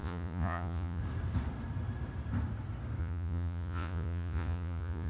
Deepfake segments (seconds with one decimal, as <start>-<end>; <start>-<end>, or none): 0.0-1.0; 3.0-5.1

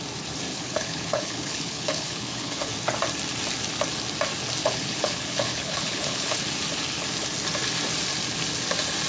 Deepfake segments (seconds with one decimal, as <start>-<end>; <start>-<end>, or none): 0.5-2.7; 4.6-6.4

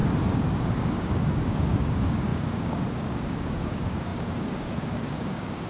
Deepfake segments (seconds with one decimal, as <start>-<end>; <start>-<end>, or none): 0.6-5.7

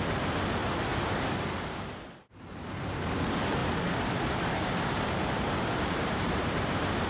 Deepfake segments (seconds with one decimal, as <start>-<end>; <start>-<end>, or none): 0.9-1.9; 3.6-7.1

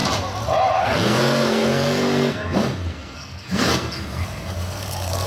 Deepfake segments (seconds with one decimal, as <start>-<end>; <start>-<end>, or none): 0.8-5.3

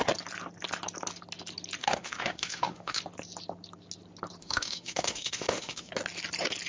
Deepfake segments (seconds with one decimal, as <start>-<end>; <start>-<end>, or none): 1.8-3.0; 4.4-5.9

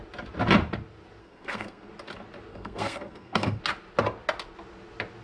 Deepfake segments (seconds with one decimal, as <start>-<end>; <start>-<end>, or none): 1.2-1.9; 2.5-3.6